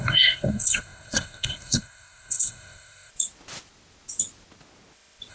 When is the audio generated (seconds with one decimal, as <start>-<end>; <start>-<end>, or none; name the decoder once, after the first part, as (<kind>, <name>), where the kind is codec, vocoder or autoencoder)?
0.0-3.1 (codec, SNAC)